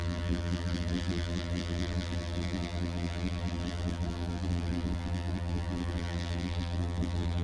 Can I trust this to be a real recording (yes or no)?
no